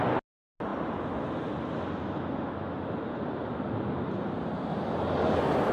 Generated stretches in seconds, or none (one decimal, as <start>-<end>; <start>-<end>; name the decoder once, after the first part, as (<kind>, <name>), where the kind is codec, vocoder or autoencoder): none